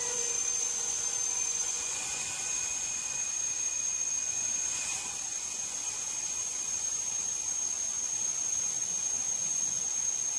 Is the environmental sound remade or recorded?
remade